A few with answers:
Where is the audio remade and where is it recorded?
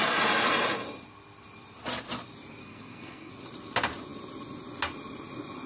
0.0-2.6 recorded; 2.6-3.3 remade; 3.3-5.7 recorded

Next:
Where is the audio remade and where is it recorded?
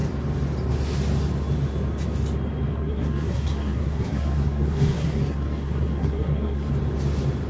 0.0-2.7 recorded; 2.7-6.7 remade; 6.7-7.5 recorded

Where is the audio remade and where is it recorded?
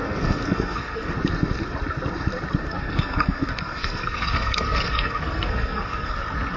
0.0-1.1 remade; 1.1-2.6 recorded; 2.6-6.1 remade; 6.1-6.6 recorded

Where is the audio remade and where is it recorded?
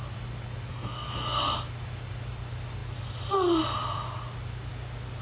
0.0-0.7 recorded; 0.7-1.4 remade; 1.4-5.2 recorded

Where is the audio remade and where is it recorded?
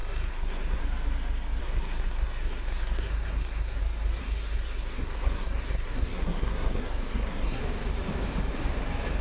0.0-0.8 remade; 0.8-1.6 recorded; 1.6-3.8 remade; 3.8-4.2 recorded; 4.2-7.6 remade; 7.6-9.2 recorded